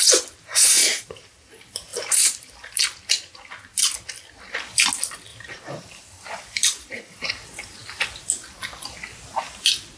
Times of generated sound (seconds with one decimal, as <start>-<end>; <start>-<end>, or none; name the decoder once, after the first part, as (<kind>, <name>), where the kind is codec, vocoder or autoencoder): 0.8-1.5 (vocoder, BigVGAN v2); 1.9-2.8; 5.3-7.3